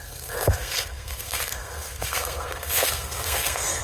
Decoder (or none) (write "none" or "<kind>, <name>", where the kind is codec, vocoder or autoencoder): codec, SNAC